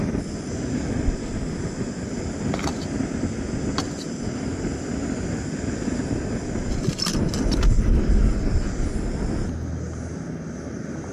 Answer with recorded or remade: recorded